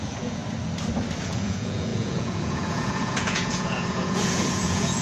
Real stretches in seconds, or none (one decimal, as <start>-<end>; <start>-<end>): 0.4-1.2